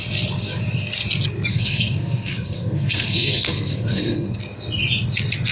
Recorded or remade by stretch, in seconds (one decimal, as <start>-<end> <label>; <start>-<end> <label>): 0.0-1.5 recorded; 1.5-4.4 remade; 4.4-5.5 recorded